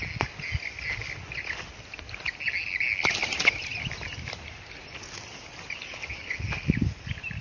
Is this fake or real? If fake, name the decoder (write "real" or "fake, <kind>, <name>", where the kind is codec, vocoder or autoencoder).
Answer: real